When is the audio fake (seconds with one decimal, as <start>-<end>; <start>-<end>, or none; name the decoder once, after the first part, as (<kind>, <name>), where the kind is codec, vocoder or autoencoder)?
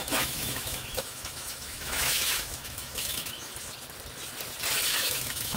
0.0-3.5 (autoencoder, DAC-VAE); 4.9-5.6